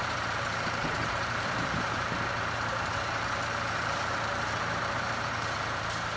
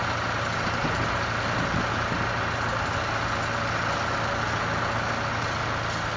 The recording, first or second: second